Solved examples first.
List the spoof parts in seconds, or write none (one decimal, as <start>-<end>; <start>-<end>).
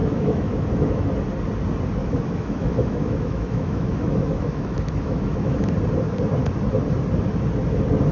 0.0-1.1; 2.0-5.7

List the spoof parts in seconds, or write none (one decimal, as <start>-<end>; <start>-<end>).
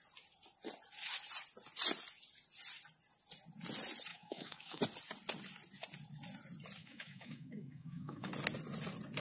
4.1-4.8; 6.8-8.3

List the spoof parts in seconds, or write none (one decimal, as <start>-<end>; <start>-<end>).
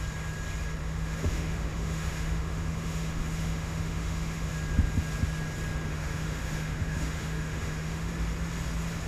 0.8-4.5; 5.9-8.1